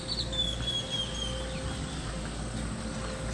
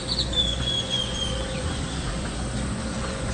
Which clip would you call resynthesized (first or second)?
second